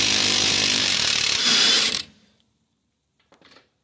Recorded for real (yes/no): no